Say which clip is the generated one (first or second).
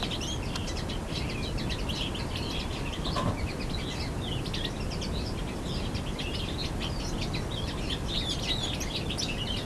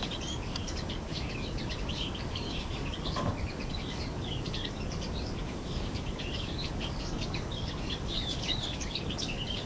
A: second